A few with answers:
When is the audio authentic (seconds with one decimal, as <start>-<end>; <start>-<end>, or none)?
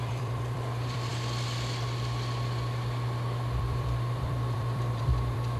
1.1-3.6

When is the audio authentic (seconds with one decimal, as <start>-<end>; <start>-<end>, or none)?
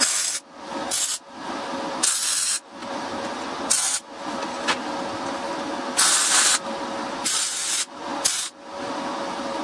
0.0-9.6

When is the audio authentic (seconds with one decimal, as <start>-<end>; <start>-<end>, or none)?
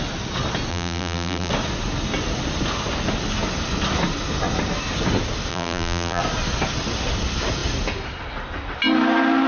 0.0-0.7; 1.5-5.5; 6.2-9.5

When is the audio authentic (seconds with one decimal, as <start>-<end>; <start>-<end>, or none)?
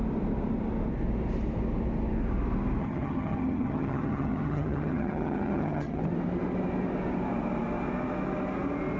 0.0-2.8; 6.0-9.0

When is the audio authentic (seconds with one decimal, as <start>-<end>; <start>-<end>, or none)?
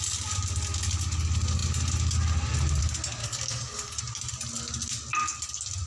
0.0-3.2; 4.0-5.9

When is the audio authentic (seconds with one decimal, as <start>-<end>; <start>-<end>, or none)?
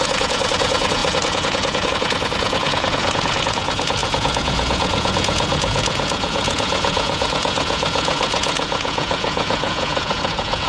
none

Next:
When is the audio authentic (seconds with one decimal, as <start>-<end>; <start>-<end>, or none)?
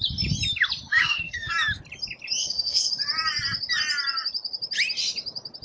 0.0-1.0; 1.5-2.4; 2.9-5.6